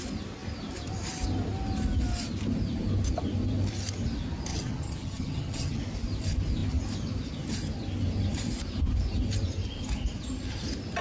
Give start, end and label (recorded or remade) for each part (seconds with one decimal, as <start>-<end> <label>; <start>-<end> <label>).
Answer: 0.0-4.5 recorded; 4.5-5.8 remade; 5.8-11.0 recorded